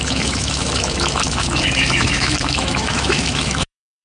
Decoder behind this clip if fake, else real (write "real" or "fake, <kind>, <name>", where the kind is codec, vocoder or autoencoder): fake, autoencoder, DAC-VAE